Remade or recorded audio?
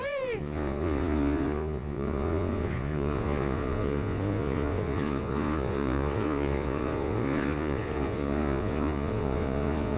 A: remade